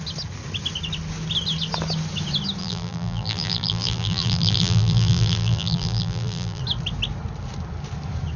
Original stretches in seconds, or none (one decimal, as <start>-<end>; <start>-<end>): 0.0-2.6; 6.6-8.4